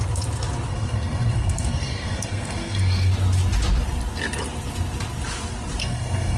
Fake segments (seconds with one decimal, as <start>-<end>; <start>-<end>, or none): 0.7-3.1; 5.8-6.4

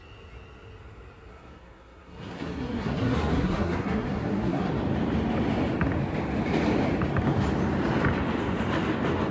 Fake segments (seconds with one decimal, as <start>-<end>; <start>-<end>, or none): 1.3-4.7

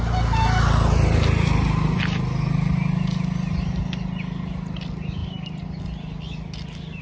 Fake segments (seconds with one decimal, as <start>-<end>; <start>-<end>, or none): none

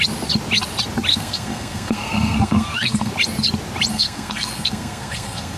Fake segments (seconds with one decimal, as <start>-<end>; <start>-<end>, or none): 1.1-3.1; 3.9-5.6

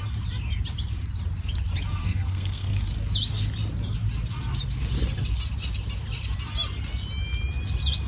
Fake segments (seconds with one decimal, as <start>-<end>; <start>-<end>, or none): 2.0-2.8

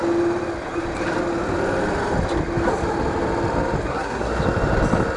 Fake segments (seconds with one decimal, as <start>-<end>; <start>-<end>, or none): 3.9-4.4

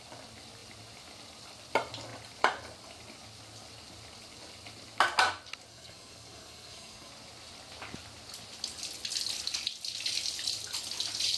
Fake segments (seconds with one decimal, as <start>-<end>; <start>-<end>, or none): 5.7-7.1

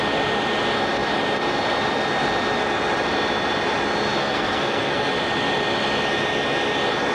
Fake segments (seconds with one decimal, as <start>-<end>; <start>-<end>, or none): 4.2-5.1